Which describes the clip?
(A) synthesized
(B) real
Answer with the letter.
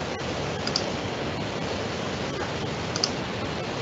B